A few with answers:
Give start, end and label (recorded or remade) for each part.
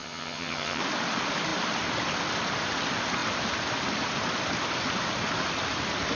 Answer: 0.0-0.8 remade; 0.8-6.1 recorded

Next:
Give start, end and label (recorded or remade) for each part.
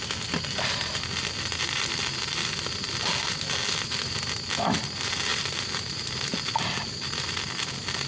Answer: 0.0-8.1 recorded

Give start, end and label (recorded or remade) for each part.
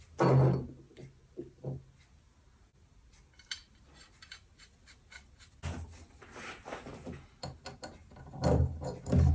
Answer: 0.0-9.3 recorded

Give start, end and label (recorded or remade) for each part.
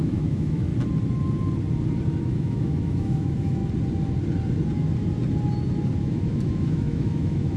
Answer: 0.0-0.7 remade; 0.7-2.2 recorded; 2.2-3.6 remade; 3.6-6.0 recorded; 6.0-7.6 remade